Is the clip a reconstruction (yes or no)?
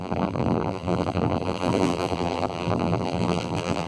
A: yes